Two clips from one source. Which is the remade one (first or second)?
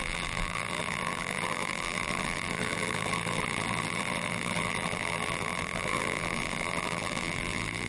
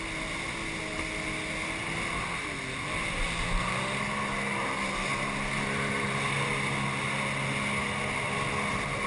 first